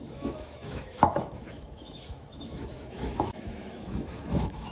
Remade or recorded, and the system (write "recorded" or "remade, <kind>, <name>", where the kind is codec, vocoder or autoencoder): remade, autoencoder, DAC-VAE